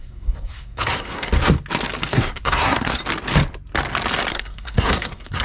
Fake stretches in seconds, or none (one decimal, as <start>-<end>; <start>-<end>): 0.0-1.3; 2.1-3.0; 4.3-5.4